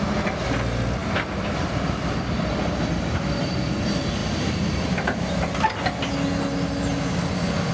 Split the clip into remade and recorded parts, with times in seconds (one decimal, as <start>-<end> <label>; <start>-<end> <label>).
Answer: 0.0-1.0 recorded; 1.0-3.5 remade; 3.5-4.2 recorded; 4.2-5.3 remade; 5.3-7.7 recorded